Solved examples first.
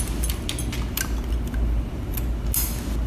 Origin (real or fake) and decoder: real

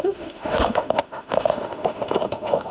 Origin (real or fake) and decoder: fake, autoencoder, DAC-VAE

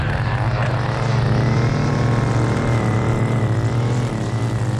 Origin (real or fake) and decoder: real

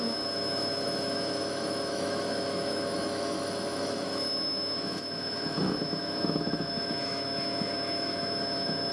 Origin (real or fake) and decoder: fake, autoencoder, DAC-VAE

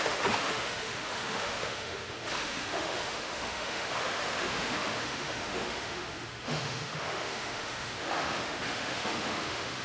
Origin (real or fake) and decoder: fake, autoencoder, DAC-VAE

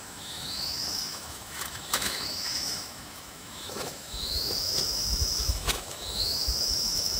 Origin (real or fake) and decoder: fake, autoencoder, DAC-VAE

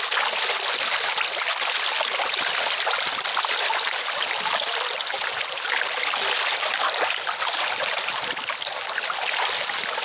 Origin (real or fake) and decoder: real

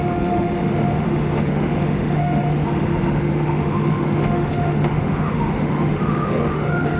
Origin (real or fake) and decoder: fake, autoencoder, DAC-VAE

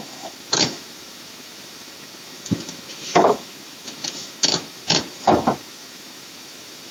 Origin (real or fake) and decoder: fake, autoencoder, DAC-VAE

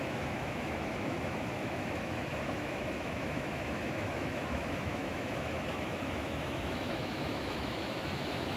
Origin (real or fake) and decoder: fake, autoencoder, DAC-VAE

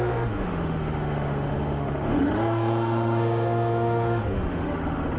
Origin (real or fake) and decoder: fake, autoencoder, DAC-VAE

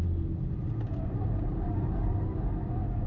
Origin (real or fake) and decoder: real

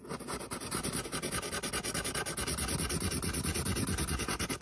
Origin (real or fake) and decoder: real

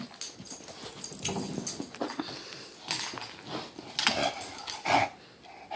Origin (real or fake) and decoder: real